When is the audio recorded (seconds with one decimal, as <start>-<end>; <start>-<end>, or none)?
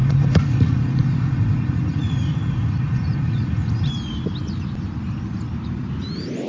3.9-6.5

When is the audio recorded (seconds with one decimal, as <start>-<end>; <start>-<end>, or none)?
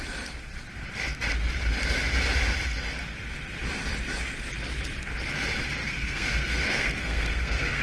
0.0-5.8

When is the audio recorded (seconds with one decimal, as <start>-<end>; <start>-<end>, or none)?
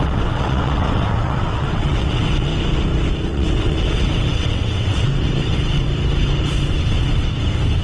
2.5-3.3; 5.9-7.8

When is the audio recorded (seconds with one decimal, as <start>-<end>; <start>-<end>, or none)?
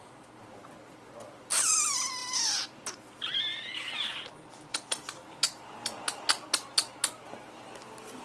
0.0-8.2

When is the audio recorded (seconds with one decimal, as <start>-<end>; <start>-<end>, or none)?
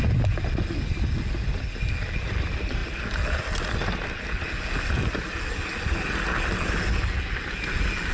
0.0-8.1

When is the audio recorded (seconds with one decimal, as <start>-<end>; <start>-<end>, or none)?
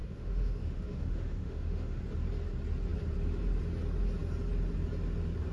2.0-5.5